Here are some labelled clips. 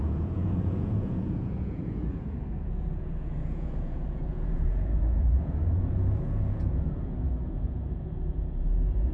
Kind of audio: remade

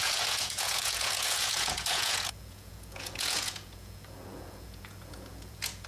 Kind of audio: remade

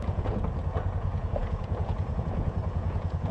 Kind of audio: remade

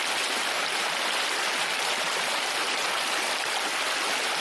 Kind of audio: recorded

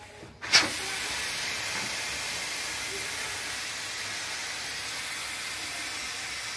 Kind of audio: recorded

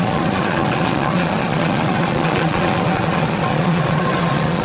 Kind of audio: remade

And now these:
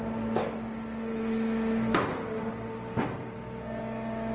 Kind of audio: recorded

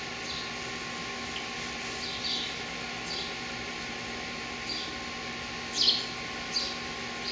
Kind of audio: recorded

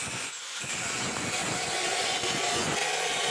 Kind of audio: remade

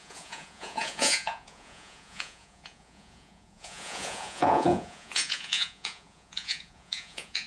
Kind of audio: remade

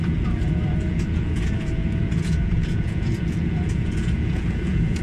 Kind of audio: remade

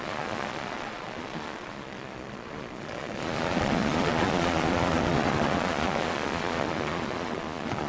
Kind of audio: remade